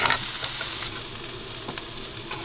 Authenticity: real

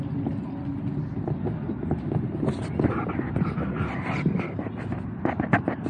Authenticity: real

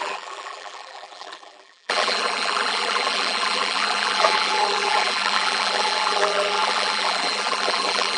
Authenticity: fake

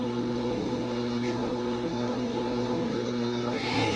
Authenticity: fake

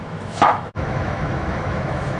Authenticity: fake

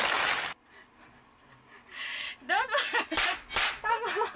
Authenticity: real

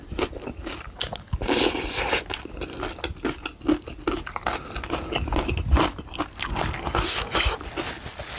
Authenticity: real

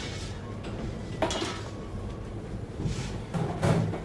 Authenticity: real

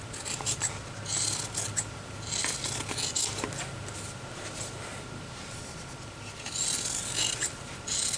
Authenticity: real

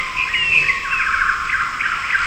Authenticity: real